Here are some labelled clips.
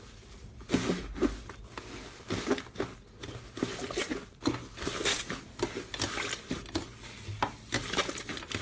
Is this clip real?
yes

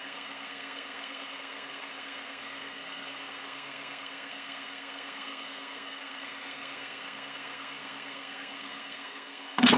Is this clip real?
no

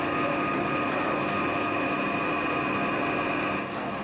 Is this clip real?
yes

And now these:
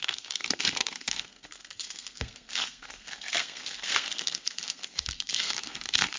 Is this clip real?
no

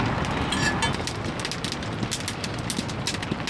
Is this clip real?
yes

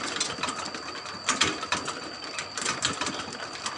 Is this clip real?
yes